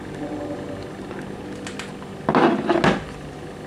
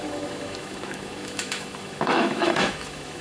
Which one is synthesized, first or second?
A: second